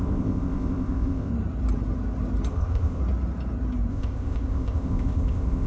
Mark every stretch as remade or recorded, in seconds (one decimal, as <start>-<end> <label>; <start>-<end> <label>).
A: 0.0-1.3 remade; 1.3-2.5 recorded; 2.5-3.0 remade; 3.0-3.9 recorded; 3.9-5.7 remade